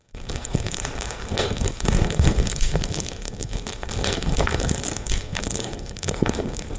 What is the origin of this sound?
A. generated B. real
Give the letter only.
A